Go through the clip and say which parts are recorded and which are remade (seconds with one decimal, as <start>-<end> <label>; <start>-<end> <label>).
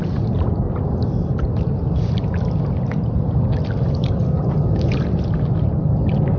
0.0-6.4 recorded